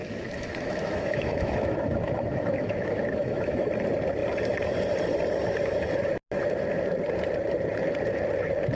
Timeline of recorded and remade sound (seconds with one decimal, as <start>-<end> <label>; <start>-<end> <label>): 0.0-3.7 remade; 3.7-8.7 recorded